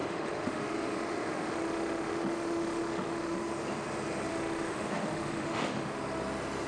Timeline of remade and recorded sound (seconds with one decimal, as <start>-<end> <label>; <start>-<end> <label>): 0.0-3.4 remade; 3.4-4.3 recorded; 4.3-6.0 remade; 6.0-6.7 recorded